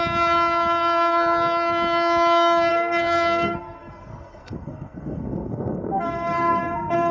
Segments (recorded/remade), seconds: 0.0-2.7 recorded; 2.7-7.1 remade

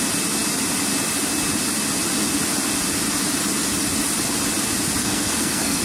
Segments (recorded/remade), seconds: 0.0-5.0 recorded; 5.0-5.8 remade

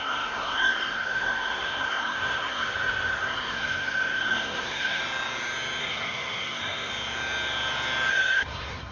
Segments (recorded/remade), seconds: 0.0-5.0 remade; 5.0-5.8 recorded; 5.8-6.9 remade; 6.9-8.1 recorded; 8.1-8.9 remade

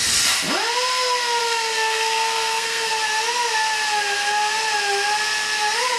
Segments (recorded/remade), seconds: 0.0-1.4 recorded; 1.4-2.9 remade; 2.9-6.0 recorded

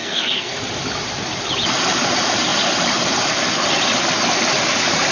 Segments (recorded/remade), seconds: 0.0-0.6 remade; 0.6-5.1 recorded

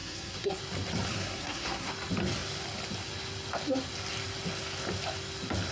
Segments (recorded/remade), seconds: 0.0-0.6 remade; 0.6-1.1 recorded; 1.1-1.9 remade; 1.9-5.7 recorded